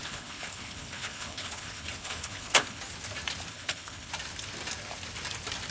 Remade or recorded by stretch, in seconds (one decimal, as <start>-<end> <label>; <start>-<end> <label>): 0.0-2.8 remade; 2.8-3.5 recorded; 3.5-4.1 remade; 4.1-5.7 recorded